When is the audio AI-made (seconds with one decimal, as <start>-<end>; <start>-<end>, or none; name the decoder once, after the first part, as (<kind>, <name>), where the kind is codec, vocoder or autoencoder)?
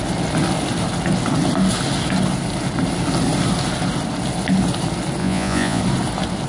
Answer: 5.2-5.8 (vocoder, Vocos)